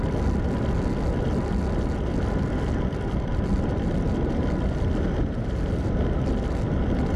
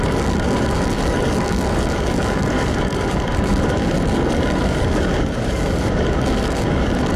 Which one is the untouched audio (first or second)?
first